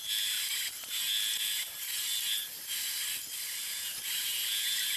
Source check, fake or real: real